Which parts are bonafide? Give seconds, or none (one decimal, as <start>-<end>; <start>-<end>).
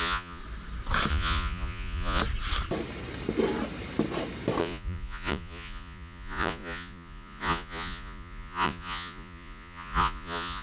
0.4-1.1; 2.2-4.6